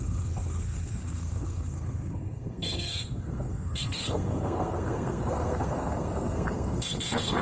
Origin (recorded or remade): remade